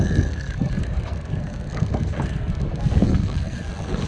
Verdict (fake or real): fake